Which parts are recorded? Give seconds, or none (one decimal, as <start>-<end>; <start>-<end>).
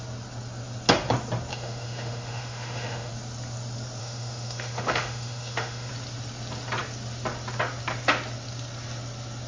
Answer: 0.0-1.5; 3.1-4.0; 5.9-9.5